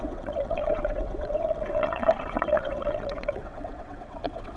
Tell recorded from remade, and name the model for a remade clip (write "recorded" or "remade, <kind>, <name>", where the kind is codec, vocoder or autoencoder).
remade, vocoder, WaveNeXt